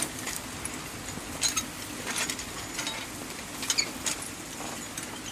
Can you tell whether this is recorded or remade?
recorded